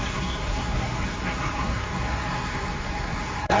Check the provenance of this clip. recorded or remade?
remade